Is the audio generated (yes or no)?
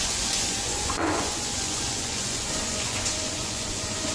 yes